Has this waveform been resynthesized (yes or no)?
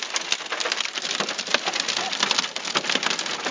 no